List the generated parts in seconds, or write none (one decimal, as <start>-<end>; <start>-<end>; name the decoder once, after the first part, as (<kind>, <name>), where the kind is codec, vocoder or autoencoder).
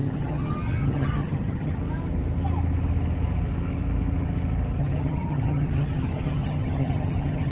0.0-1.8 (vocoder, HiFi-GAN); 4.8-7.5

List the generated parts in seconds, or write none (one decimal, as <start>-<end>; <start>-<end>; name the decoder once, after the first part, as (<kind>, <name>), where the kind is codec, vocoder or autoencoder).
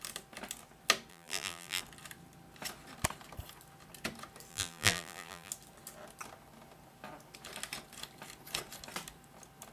1.1-1.8 (vocoder, BigVGAN v2); 4.5-5.5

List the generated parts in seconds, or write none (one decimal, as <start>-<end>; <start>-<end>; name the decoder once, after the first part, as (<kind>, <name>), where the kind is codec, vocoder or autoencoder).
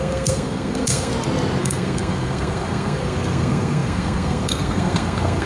0.0-1.1 (codec, SNAC); 1.6-5.5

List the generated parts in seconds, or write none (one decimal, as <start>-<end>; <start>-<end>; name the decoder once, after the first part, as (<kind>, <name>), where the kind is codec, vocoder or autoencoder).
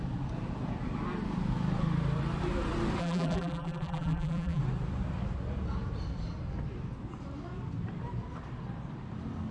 3.0-4.6 (vocoder, BigVGAN v2)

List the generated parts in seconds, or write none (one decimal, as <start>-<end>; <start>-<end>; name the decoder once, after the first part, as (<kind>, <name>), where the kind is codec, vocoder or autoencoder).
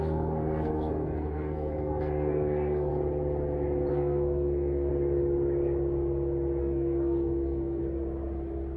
0.0-2.9 (codec, SNAC); 3.9-4.9; 6.6-7.8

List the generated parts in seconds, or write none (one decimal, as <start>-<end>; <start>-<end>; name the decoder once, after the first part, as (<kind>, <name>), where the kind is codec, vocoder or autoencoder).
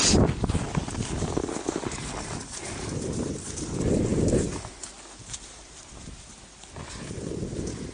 none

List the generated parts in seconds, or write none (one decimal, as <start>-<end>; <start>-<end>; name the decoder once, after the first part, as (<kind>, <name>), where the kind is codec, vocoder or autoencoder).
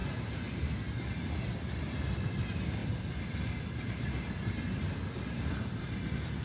none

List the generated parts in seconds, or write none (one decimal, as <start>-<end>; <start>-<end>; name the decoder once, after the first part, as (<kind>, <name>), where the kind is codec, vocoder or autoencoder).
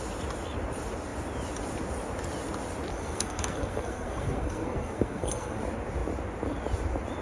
2.9-5.6 (codec, SNAC)